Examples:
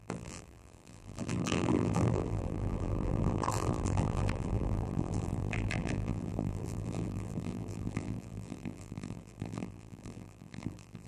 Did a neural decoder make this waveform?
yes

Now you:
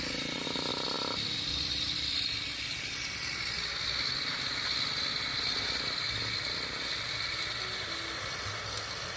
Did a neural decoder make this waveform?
no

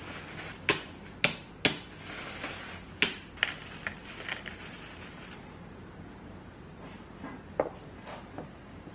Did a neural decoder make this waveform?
no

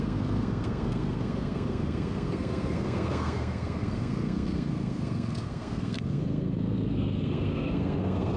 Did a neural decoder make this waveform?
yes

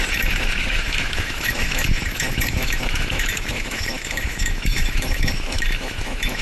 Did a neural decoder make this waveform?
yes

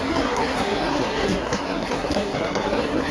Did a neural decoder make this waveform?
yes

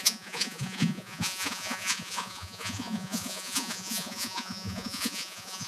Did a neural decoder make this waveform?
yes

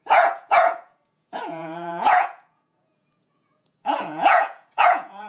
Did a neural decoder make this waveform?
yes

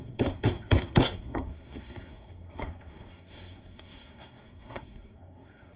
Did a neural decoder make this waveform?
yes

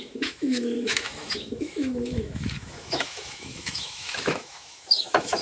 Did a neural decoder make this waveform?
yes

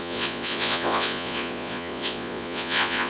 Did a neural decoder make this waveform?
yes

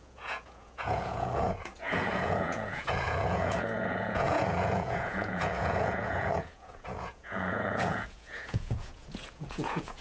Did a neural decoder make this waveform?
yes